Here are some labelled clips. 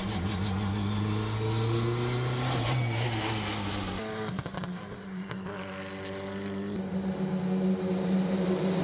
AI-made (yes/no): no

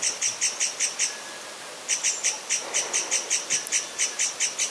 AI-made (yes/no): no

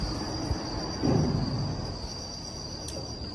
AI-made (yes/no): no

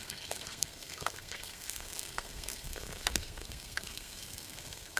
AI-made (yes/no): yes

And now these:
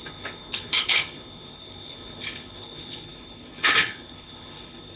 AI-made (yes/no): yes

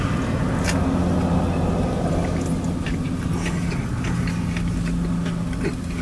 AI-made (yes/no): no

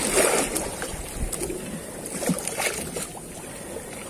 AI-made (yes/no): no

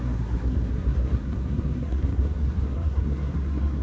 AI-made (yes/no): yes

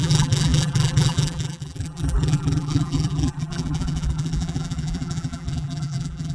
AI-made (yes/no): yes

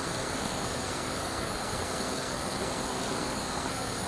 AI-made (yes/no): yes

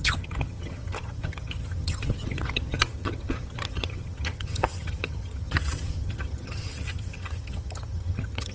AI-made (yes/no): yes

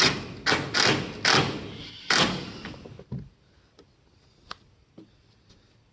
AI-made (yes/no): no